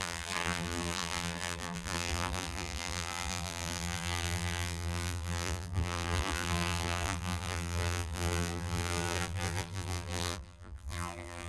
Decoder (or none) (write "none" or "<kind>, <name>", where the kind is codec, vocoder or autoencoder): vocoder, BigVGAN v2